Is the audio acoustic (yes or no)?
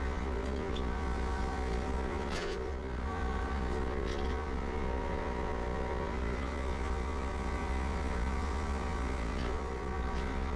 no